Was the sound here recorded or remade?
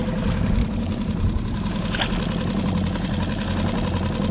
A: recorded